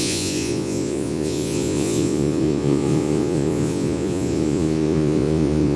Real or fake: fake